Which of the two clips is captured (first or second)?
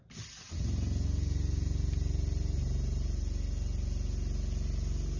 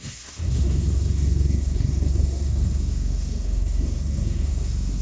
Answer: first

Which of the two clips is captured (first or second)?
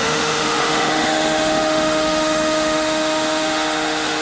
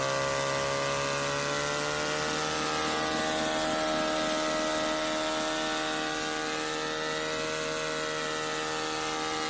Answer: second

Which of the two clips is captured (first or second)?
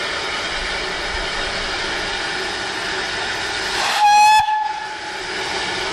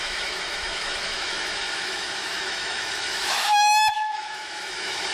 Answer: first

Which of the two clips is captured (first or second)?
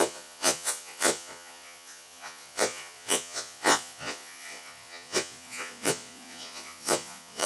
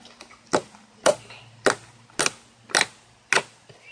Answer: second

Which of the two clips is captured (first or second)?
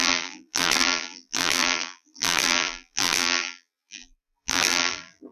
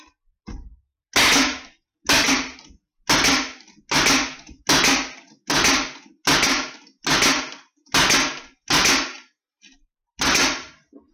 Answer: second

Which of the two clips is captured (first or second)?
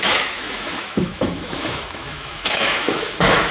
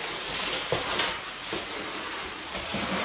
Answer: second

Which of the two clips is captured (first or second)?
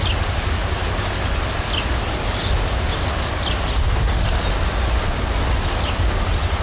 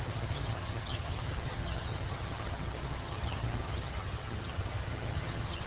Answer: first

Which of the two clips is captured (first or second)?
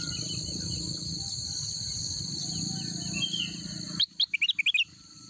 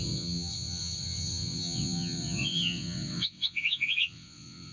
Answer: first